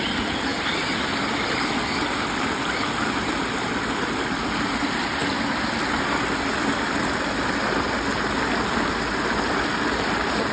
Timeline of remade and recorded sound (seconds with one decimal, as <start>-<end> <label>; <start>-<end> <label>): 0.0-5.2 remade; 5.2-9.4 recorded; 9.4-10.5 remade